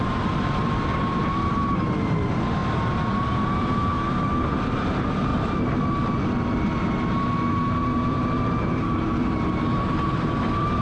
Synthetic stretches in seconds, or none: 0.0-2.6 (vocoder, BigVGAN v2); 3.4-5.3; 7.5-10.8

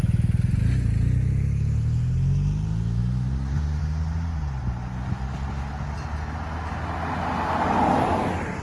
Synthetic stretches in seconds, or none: 3.0-3.8 (vocoder, BigVGAN v2)

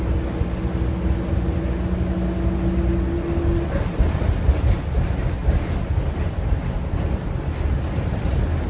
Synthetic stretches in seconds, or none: none

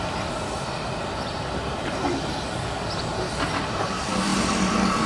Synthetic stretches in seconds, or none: none